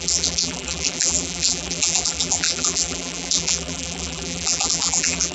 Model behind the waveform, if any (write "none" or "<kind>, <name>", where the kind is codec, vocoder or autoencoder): vocoder, BigVGAN v2